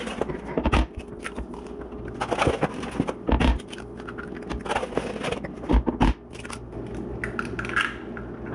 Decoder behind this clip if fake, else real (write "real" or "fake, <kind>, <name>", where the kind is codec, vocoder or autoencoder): real